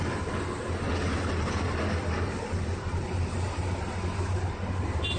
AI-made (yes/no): no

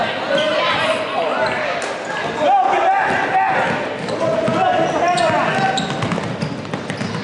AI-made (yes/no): no